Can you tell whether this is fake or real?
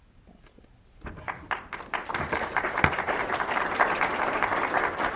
real